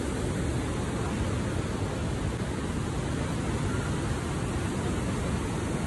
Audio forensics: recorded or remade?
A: recorded